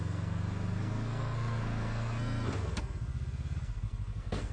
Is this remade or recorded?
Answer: remade